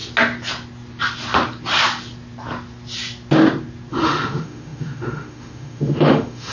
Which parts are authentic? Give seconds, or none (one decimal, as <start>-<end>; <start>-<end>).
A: 0.0-3.9